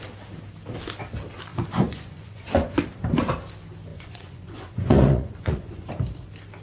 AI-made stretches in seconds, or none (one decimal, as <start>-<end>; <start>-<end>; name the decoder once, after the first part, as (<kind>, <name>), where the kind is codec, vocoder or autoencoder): 1.5-2.8 (vocoder, Vocos); 3.9-5.9